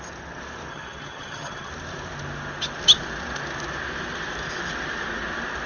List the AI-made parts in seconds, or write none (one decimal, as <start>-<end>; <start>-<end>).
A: 0.7-1.7